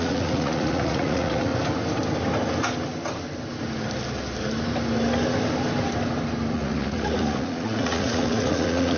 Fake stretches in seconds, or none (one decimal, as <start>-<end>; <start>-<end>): 0.0-1.5; 6.5-9.0